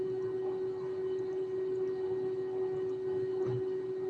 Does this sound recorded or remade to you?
recorded